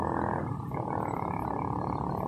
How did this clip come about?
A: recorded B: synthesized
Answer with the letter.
A